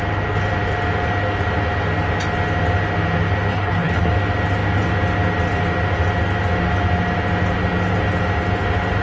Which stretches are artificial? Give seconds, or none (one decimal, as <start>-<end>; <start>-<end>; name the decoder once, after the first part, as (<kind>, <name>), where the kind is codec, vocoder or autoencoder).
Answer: 3.5-4.1 (codec, HILCodec)